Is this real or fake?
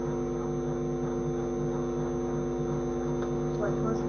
real